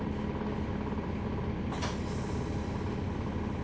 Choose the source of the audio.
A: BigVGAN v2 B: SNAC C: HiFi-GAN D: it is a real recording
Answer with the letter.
D